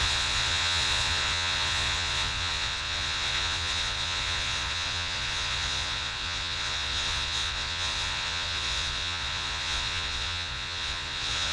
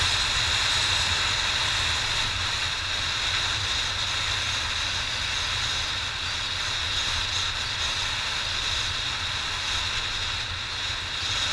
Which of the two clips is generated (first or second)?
first